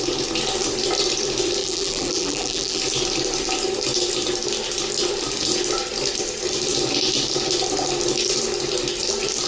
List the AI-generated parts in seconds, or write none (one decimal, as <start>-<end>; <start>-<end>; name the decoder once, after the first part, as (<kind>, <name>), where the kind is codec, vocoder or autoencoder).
1.6-2.8 (vocoder, BigVGAN v2)